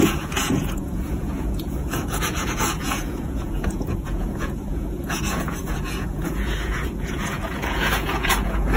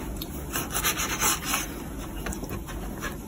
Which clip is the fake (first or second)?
first